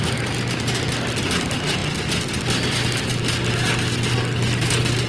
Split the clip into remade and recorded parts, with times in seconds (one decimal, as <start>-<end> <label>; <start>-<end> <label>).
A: 0.0-5.1 recorded